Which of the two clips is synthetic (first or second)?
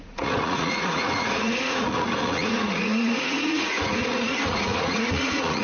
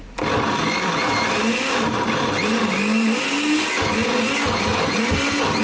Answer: first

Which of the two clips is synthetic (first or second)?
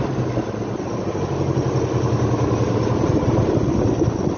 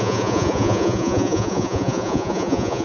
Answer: second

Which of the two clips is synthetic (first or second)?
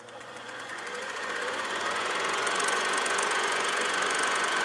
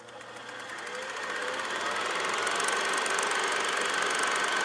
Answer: first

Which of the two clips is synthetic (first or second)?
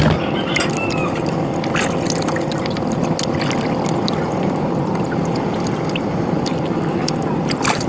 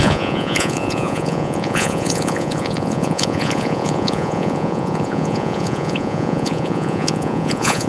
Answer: second